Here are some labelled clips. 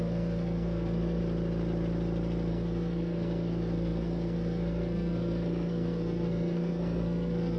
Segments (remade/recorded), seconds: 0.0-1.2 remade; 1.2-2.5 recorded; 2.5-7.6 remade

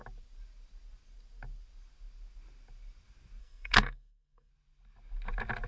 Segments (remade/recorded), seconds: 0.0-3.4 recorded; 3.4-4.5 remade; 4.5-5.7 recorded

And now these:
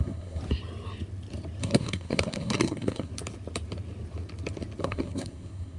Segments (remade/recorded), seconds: 0.0-0.4 remade; 0.4-1.6 recorded; 1.6-3.1 remade; 3.1-4.8 recorded; 4.8-5.8 remade

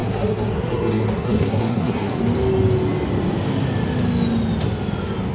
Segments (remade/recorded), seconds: 0.0-2.2 remade; 2.2-5.3 recorded

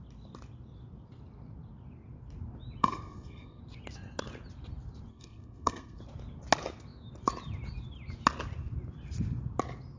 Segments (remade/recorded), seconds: 0.0-2.8 recorded; 2.8-3.6 remade; 3.6-5.1 recorded; 5.1-6.0 remade; 6.0-10.0 recorded

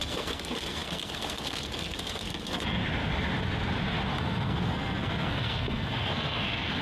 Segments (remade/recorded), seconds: 0.0-2.8 remade; 2.8-4.2 recorded; 4.2-6.8 remade

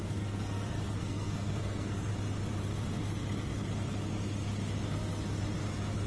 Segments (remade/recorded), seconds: 0.0-2.1 remade; 2.1-6.1 recorded

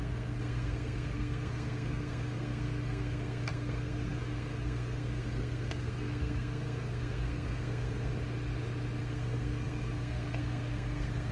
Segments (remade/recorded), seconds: 0.0-8.1 remade; 8.1-9.0 recorded; 9.0-11.3 remade